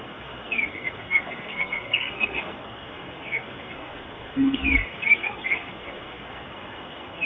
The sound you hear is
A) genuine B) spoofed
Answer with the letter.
B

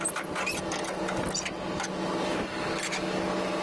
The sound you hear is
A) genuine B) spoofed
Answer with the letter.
A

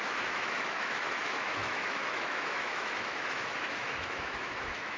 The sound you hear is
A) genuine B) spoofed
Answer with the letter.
B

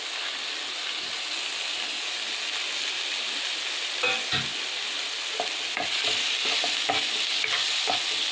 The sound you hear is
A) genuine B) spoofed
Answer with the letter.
A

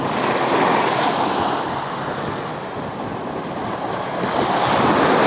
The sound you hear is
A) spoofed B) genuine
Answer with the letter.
B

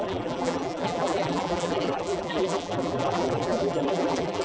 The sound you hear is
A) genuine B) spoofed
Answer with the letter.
B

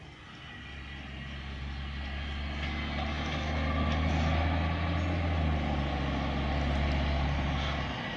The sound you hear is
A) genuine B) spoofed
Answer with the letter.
A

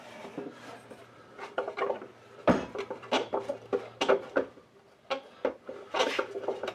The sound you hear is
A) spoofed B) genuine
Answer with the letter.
A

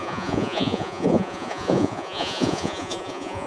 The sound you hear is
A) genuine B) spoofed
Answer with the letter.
B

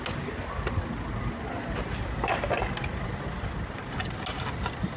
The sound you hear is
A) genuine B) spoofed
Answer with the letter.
A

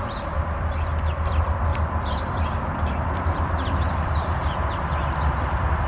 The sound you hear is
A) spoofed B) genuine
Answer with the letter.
A